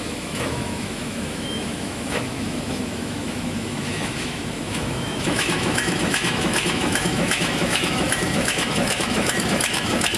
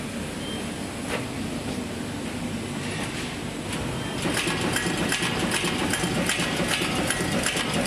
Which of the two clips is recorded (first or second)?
second